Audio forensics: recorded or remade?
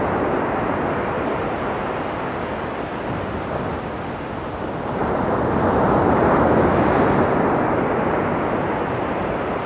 recorded